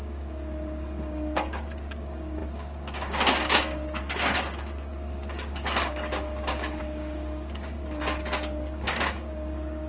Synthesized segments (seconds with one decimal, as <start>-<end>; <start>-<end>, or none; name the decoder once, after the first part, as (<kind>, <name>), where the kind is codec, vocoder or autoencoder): 0.0-9.9 (codec, DAC)